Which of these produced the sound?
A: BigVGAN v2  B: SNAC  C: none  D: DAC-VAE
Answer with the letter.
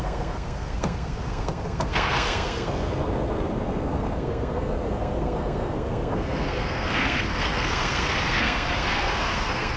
B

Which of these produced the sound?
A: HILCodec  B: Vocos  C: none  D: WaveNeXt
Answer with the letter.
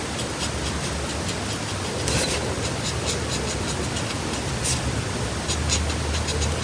C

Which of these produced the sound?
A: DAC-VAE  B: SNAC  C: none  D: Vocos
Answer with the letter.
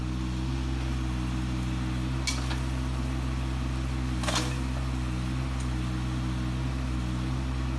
C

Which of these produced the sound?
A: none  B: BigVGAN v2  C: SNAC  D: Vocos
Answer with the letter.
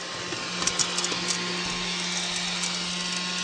A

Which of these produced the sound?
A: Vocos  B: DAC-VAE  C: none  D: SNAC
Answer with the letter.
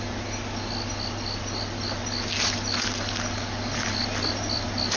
C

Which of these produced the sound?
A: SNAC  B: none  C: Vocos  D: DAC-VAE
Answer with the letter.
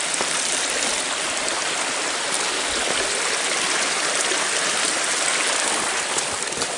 B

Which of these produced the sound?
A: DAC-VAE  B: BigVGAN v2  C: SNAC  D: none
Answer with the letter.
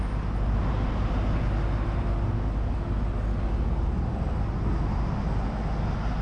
D